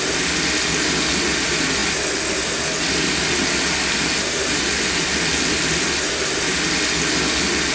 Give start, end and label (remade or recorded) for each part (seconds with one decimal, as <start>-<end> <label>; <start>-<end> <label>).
0.0-7.7 recorded